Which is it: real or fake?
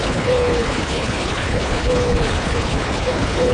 fake